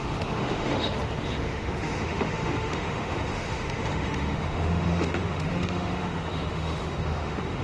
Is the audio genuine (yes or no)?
no